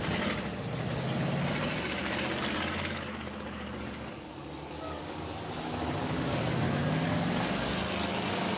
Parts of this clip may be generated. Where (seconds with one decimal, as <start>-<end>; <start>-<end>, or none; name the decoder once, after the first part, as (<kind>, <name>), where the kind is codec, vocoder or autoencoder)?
2.0-6.5 (codec, DAC)